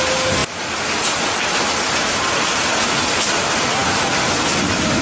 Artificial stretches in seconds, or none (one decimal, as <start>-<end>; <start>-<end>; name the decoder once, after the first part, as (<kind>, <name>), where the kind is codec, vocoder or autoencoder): none